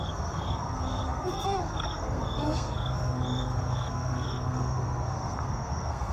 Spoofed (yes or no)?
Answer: yes